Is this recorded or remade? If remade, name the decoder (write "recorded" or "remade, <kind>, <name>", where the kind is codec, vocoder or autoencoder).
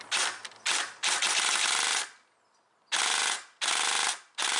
recorded